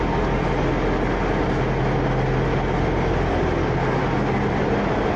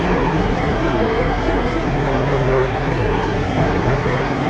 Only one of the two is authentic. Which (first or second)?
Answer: first